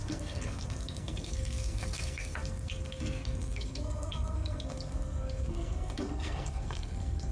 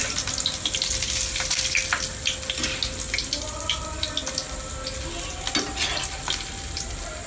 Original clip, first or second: second